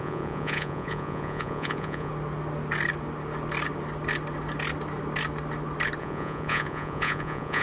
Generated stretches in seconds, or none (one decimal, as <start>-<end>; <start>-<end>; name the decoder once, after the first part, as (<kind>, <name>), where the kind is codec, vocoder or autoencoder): 0.0-2.1 (vocoder, Vocos); 6.0-7.6

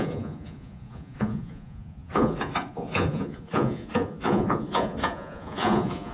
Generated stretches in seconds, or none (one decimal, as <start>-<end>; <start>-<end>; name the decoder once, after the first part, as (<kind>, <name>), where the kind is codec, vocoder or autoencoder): 0.0-6.1 (vocoder, Vocos)

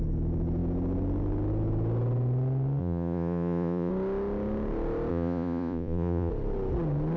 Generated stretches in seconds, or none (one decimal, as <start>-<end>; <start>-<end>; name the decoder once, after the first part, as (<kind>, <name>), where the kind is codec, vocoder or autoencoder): 2.8-3.9 (vocoder, Vocos); 5.1-6.3